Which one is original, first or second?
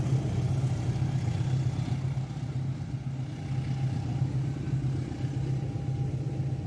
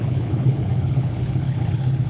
first